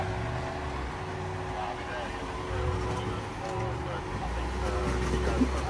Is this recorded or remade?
recorded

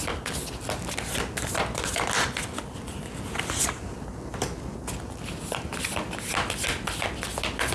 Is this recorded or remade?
recorded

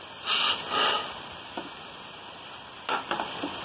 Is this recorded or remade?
remade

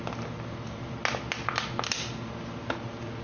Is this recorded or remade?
recorded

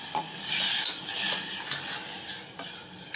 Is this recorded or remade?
recorded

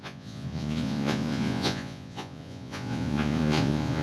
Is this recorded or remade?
remade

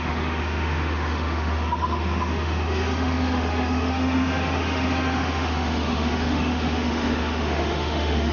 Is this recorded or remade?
remade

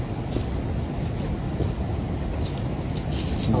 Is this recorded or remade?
recorded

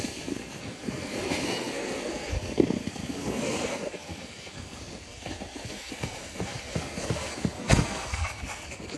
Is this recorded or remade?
remade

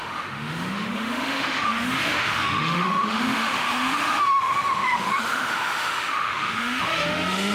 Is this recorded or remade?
remade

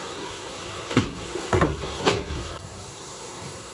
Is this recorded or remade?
remade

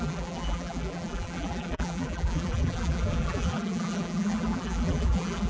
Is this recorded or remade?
remade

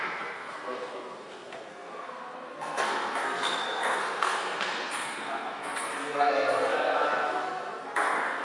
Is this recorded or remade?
remade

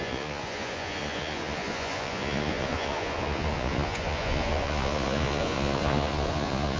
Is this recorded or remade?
remade